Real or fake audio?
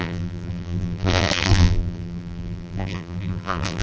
fake